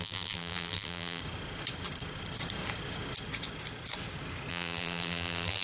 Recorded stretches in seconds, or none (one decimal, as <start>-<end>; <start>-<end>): 1.2-4.5